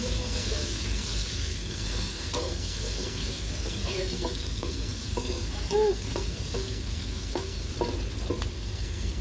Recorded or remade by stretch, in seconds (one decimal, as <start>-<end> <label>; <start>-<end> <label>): 0.0-7.7 remade; 7.7-8.5 recorded; 8.5-9.2 remade